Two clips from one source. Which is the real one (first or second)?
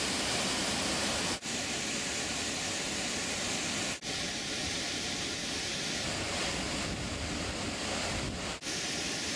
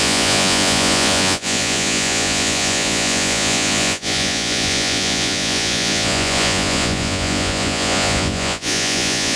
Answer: first